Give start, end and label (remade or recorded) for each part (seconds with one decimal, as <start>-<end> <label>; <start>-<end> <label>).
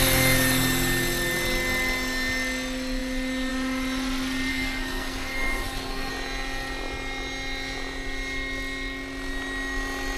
0.0-4.5 recorded; 4.5-6.1 remade; 6.1-10.2 recorded